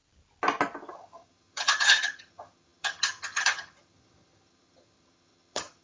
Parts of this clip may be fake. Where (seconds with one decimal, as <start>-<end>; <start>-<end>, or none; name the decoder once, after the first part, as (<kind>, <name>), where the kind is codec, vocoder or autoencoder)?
0.9-5.8 (vocoder, HiFi-GAN)